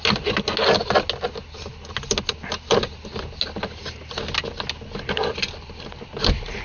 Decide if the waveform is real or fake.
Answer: real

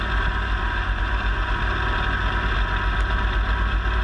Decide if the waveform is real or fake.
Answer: real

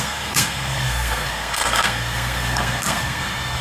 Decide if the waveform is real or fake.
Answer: fake